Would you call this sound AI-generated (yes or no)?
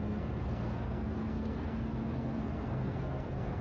yes